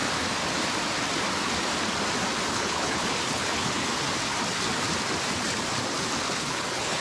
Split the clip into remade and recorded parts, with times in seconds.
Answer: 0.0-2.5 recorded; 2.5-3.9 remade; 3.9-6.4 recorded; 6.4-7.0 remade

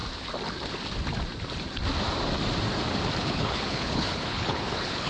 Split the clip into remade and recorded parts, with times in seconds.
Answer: 0.0-3.2 recorded; 3.2-5.1 remade